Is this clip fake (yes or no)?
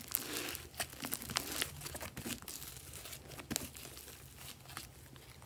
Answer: no